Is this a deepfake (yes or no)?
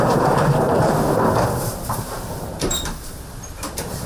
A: yes